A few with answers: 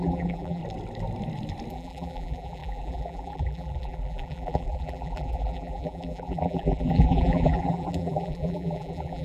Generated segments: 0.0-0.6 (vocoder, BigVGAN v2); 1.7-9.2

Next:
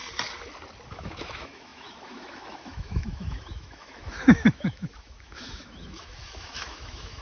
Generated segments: 0.9-7.2 (autoencoder, DAC-VAE)

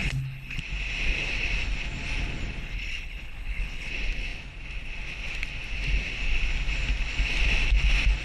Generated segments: 0.0-0.6 (codec, HILCodec); 2.6-3.9